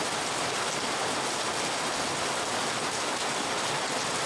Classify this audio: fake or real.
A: real